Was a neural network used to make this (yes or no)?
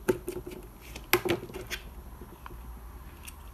no